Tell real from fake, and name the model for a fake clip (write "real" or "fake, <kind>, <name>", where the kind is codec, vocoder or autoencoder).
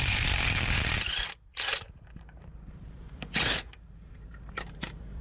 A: fake, vocoder, BigVGAN v2